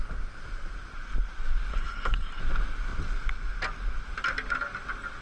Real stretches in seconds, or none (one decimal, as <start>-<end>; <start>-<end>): 0.0-1.7; 2.4-5.2